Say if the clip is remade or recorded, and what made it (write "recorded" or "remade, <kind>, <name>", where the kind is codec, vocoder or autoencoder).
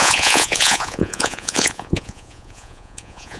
remade, vocoder, Vocos